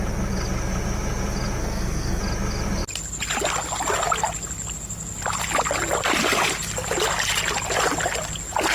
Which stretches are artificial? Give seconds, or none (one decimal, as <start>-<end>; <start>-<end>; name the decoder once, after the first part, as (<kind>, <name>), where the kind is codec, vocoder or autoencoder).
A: 1.6-2.2 (codec, SNAC)